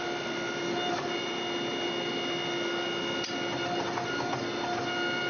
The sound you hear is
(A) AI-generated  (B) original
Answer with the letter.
B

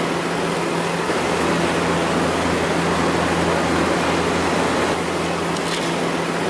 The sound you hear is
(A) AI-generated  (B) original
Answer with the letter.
B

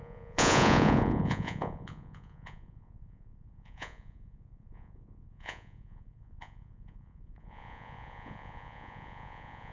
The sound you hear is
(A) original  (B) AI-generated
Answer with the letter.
B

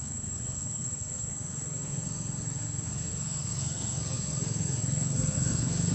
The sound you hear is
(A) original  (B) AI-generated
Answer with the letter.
B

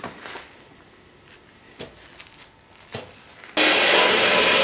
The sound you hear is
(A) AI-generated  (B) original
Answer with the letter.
B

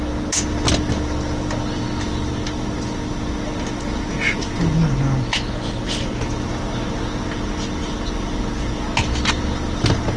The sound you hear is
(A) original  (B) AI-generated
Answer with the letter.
A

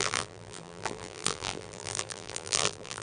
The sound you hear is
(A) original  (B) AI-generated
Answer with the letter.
B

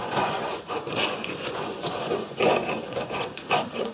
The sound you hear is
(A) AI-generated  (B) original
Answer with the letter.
A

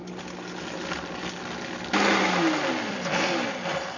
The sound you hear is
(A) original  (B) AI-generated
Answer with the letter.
A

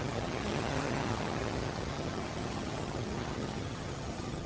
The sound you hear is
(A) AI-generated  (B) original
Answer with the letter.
A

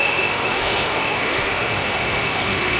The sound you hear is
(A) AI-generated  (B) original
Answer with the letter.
A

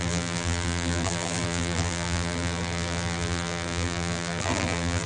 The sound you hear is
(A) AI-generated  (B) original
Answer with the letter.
A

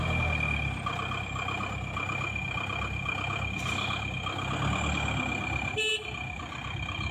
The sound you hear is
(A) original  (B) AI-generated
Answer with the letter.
A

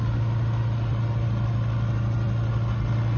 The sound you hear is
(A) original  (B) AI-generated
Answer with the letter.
A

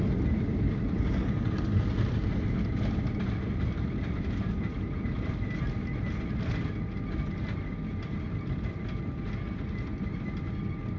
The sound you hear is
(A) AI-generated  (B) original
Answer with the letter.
B